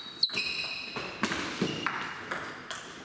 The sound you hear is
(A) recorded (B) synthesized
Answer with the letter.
A